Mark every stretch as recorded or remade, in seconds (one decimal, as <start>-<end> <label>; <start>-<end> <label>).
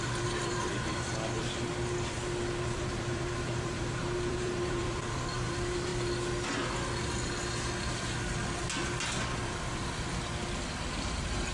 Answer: 0.0-0.9 remade; 0.9-2.1 recorded; 2.1-5.9 remade; 5.9-11.0 recorded; 11.0-11.5 remade